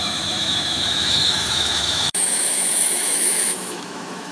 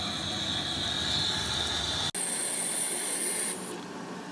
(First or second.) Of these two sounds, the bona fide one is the second